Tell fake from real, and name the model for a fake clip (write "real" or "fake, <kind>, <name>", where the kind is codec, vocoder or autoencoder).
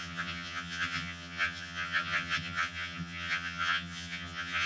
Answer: fake, vocoder, HiFi-GAN